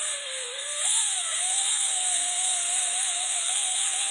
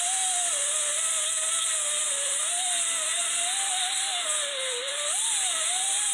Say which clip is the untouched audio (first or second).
second